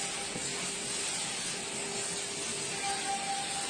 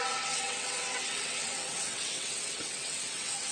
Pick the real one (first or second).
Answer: first